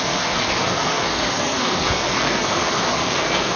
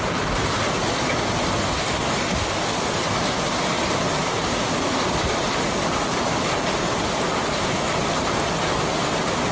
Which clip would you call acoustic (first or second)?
second